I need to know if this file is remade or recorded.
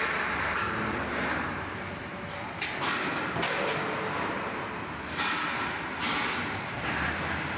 recorded